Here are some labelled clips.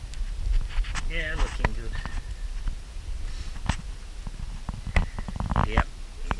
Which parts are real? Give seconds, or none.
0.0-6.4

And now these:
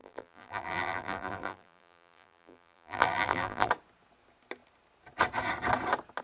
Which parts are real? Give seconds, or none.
3.7-6.2